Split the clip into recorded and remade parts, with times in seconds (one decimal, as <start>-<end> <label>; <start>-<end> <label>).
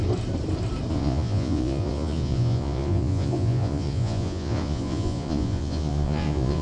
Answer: 0.0-0.9 recorded; 0.9-6.6 remade